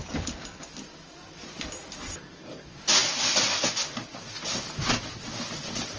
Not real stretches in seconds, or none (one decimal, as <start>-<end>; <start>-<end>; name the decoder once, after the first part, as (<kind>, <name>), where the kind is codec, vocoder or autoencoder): 0.0-2.2 (vocoder, BigVGAN v2)